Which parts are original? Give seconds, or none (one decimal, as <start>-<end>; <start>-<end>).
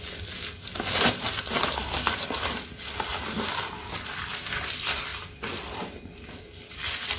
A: 1.8-4.1; 5.1-6.0